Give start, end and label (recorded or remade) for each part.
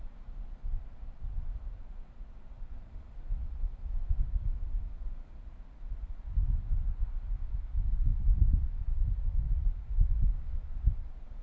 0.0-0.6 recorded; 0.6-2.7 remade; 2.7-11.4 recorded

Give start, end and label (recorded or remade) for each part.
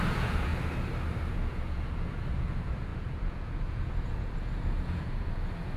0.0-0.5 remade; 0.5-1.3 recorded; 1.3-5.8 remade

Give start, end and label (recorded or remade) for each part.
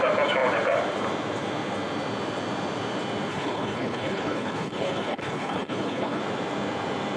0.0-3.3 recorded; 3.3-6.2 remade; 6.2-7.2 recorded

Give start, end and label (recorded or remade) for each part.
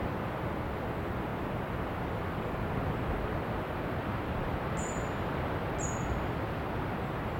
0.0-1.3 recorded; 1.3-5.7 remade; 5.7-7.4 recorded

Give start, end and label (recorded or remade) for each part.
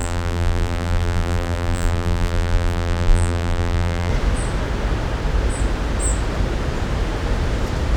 0.0-4.1 remade; 4.1-8.0 recorded